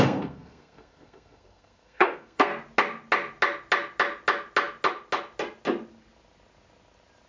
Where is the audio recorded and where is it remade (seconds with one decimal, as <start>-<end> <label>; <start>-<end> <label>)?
0.0-2.5 remade; 2.5-7.3 recorded